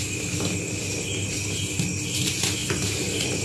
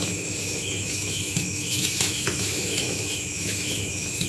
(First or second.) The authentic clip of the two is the first